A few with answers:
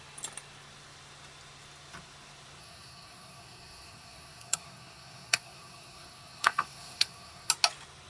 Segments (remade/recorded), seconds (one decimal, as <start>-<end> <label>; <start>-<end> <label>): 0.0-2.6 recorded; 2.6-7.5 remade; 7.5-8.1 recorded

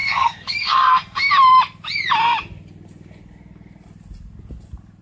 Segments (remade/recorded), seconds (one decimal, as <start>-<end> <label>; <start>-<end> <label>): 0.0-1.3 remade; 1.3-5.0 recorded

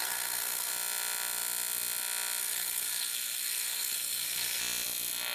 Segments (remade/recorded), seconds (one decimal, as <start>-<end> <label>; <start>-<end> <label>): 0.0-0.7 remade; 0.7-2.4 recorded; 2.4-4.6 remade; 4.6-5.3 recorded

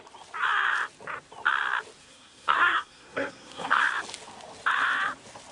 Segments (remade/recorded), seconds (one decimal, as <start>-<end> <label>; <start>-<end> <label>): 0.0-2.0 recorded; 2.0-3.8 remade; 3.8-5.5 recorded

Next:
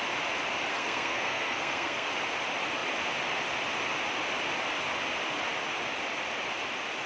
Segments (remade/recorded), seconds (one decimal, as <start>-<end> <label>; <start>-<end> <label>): 0.0-0.7 recorded; 0.7-2.1 remade; 2.1-7.1 recorded